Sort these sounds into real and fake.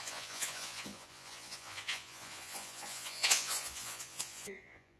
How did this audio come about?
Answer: fake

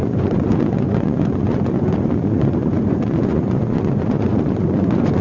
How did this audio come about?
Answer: fake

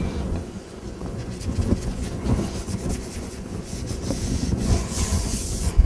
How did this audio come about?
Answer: fake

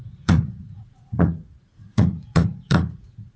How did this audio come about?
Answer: fake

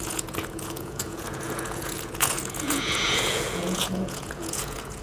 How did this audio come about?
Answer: fake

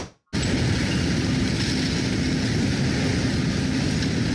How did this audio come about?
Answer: real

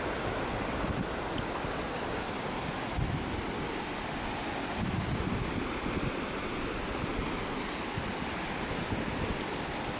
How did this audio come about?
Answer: real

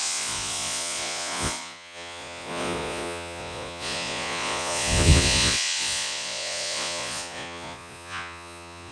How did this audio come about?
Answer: fake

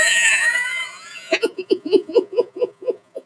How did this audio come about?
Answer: fake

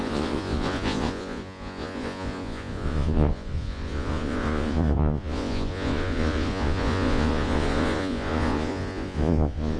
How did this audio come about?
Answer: fake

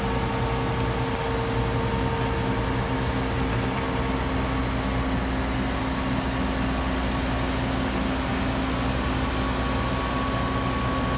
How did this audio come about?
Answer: real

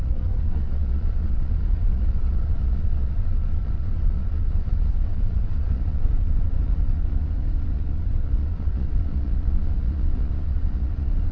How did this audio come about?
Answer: fake